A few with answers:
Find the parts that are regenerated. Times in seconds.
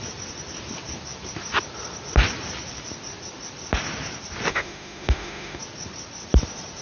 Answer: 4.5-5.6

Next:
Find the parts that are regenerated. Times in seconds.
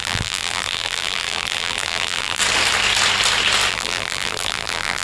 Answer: 0.0-2.4; 3.7-5.0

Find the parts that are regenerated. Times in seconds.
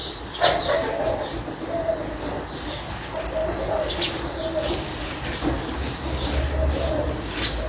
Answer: none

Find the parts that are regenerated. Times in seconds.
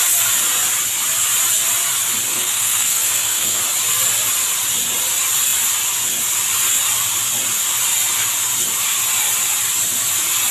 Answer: 2.3-3.6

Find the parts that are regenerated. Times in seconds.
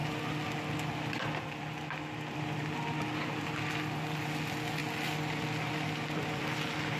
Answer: none